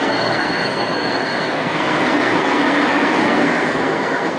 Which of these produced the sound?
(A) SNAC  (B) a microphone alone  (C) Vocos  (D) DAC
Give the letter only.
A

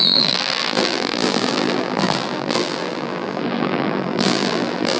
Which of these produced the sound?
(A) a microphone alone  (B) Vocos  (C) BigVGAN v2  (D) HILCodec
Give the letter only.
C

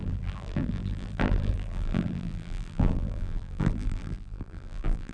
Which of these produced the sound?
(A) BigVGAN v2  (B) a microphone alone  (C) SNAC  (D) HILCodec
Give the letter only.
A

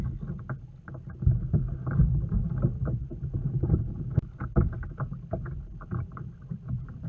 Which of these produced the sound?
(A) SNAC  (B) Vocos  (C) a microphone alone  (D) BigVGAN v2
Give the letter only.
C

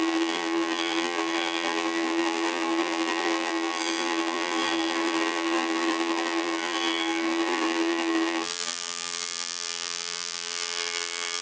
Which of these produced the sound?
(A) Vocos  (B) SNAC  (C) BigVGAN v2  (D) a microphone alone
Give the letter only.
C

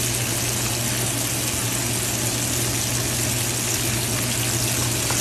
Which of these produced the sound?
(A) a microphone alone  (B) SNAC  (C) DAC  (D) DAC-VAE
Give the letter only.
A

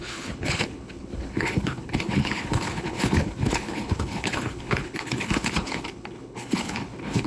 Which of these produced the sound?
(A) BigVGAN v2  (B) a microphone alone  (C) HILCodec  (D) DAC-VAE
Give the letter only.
C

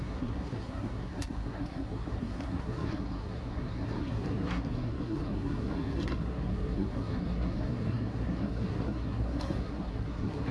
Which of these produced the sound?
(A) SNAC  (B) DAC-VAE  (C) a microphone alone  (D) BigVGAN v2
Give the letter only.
A